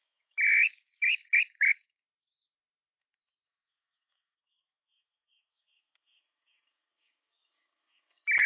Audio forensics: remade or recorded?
remade